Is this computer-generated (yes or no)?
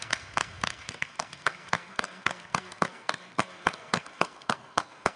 yes